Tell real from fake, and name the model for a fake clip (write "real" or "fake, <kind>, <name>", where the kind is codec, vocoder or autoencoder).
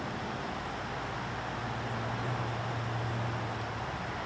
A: real